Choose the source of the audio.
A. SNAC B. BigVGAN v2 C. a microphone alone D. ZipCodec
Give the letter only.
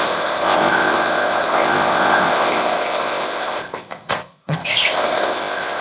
D